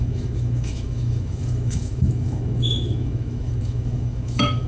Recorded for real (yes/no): no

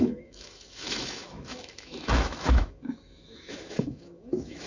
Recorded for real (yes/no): no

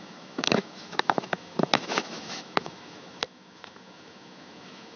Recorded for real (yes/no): no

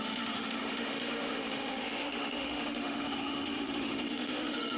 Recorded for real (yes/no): no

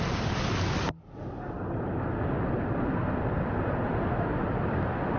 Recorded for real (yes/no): yes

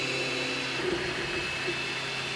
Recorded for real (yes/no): yes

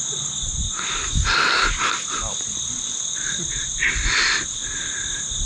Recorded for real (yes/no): yes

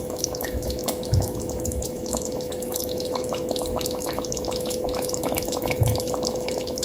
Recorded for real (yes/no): no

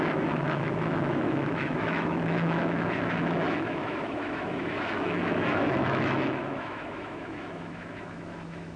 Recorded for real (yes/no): no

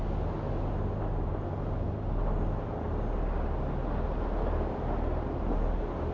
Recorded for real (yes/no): yes